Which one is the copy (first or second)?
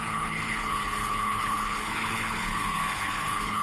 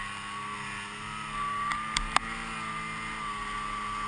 first